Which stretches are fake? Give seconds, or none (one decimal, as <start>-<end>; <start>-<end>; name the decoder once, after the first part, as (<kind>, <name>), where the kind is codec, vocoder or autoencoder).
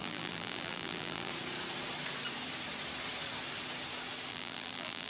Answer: 0.0-1.3 (vocoder, BigVGAN v2); 4.3-5.1